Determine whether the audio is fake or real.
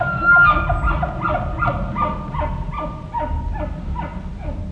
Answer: real